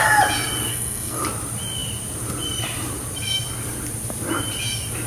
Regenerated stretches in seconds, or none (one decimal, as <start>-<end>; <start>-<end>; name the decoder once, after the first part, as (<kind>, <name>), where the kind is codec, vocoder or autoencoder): 0.7-1.2 (codec, SNAC)